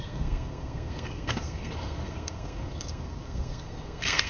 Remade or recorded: remade